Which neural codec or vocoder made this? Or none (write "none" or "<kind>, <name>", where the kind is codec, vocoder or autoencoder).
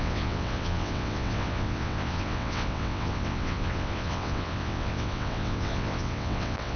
vocoder, WaveNeXt